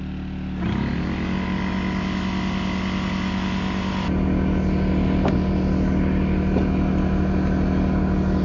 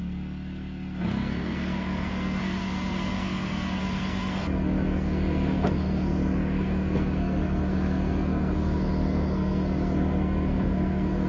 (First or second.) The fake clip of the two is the second